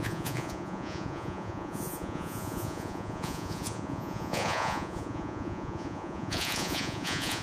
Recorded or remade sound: remade